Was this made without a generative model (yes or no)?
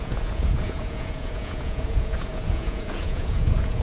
no